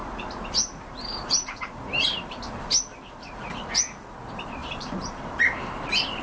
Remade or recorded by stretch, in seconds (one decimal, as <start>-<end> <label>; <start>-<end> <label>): 0.0-3.7 remade; 3.7-4.6 recorded; 4.6-5.7 remade; 5.7-6.2 recorded